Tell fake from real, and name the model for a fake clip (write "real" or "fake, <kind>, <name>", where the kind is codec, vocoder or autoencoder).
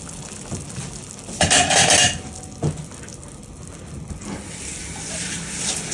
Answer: real